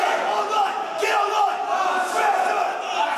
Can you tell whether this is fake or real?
real